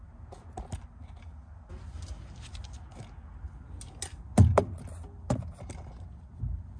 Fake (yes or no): no